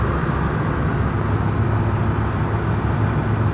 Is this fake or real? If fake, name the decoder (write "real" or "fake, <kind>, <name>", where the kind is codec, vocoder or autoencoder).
real